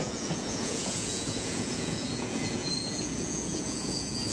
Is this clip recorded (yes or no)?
no